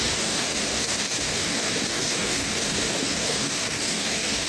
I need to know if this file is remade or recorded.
remade